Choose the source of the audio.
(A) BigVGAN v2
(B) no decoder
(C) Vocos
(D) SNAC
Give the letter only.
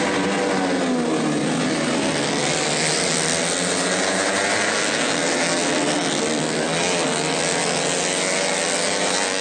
B